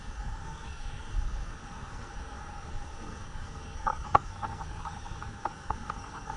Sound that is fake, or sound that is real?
fake